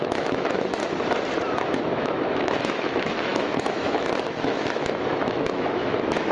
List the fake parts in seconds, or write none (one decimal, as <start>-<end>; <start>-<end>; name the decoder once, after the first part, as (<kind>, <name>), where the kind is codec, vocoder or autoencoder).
0.0-0.8 (autoencoder, DAC-VAE); 1.8-6.3